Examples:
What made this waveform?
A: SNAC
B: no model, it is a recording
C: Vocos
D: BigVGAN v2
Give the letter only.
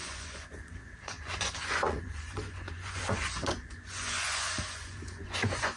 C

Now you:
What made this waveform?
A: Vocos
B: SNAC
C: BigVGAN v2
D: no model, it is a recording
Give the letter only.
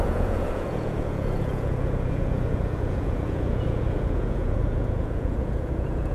A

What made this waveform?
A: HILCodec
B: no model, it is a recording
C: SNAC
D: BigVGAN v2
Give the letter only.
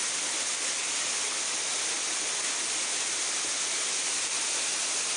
B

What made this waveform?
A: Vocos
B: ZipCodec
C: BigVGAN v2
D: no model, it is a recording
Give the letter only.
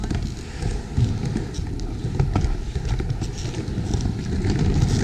D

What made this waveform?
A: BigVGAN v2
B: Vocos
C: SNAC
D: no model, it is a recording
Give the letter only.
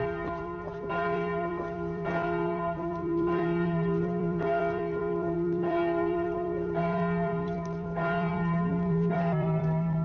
A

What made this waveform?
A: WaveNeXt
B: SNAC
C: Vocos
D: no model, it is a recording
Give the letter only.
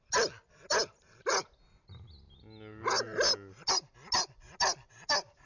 D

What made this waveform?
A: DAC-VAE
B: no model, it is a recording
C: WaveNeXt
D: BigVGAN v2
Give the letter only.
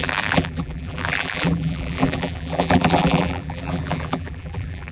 D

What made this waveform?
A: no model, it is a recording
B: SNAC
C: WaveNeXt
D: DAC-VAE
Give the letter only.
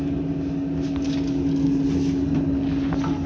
A